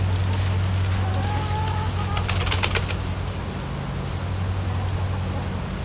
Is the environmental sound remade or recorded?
recorded